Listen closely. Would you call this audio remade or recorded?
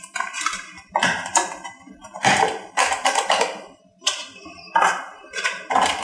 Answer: remade